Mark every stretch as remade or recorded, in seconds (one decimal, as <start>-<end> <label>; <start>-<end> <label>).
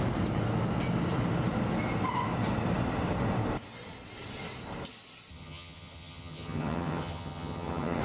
0.0-5.3 recorded; 5.3-8.0 remade